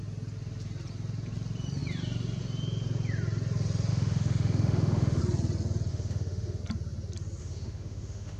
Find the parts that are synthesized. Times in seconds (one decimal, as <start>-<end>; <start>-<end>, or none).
3.9-5.2; 5.9-6.6; 7.4-8.4